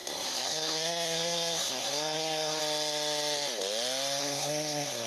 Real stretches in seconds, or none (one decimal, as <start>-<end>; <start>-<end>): 2.6-4.2